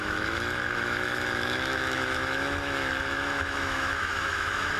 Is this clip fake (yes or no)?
yes